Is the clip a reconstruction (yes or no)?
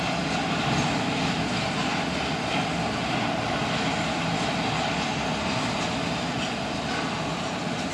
no